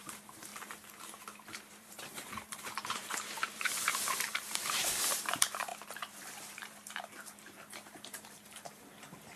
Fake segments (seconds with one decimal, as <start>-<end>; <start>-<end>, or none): 0.0-0.5; 1.5-5.7; 6.2-9.4